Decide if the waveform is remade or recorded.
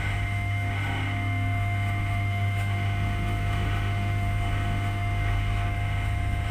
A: remade